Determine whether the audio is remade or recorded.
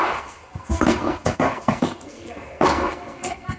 remade